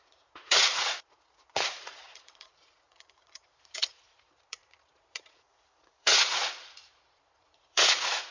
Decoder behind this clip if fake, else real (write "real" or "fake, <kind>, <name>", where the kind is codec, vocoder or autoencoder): fake, vocoder, Vocos